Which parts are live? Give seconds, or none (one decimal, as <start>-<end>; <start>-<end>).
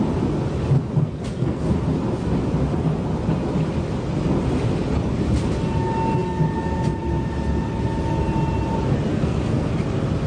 0.0-1.0; 1.6-9.1; 9.7-10.3